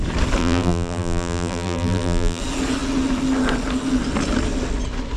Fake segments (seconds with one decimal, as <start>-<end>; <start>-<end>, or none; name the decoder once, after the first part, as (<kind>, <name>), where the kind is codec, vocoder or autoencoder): 0.4-2.4 (vocoder, BigVGAN v2)